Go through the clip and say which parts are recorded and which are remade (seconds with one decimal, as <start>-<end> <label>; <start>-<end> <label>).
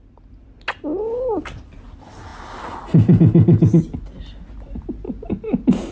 0.0-5.9 recorded